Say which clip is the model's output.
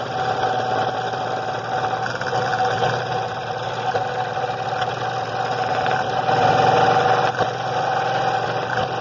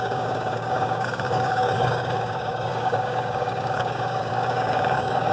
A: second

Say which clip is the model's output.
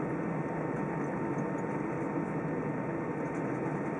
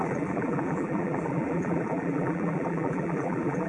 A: second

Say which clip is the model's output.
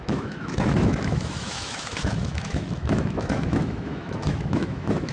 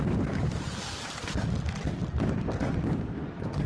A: first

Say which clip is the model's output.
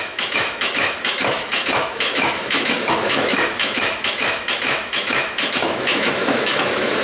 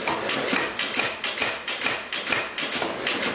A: first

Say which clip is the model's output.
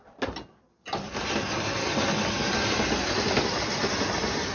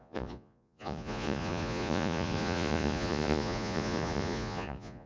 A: second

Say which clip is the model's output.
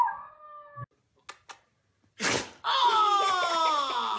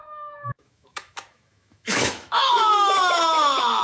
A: second